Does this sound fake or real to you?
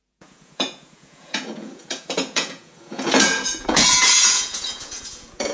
fake